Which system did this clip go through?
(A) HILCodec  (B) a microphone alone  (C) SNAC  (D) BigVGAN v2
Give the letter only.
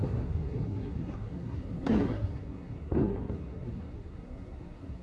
C